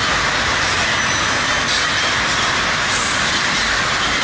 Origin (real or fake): real